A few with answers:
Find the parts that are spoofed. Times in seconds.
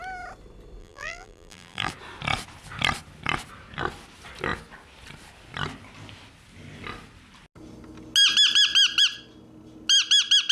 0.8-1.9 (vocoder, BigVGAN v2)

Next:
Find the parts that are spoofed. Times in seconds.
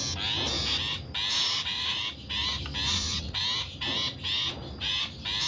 1.4-2.0 (vocoder, Vocos); 2.9-3.4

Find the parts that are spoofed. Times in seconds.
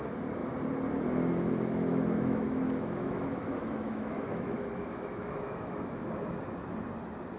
1.9-6.1 (autoencoder, DAC-VAE)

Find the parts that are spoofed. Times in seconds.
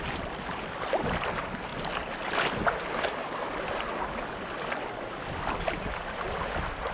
none